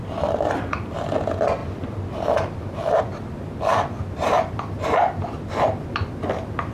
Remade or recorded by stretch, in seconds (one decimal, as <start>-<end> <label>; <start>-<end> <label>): 0.0-1.6 remade; 1.6-3.0 recorded; 3.0-6.7 remade